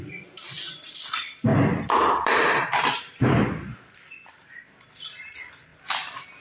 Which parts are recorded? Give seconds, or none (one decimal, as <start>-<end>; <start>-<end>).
none